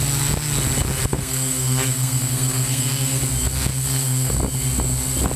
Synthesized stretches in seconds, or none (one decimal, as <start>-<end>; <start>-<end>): 1.1-3.2; 3.7-4.3